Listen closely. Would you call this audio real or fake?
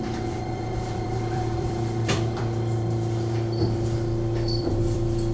fake